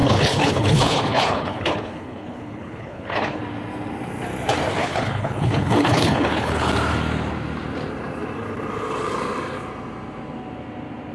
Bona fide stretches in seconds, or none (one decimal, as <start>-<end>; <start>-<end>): 3.4-4.8; 6.7-11.1